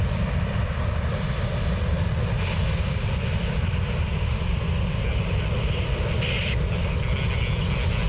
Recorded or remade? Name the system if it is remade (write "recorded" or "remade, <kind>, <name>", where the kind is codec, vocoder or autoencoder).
recorded